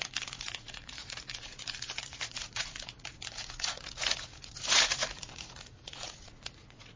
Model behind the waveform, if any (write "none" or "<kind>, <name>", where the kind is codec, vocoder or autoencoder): vocoder, Vocos